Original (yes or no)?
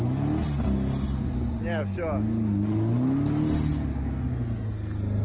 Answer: yes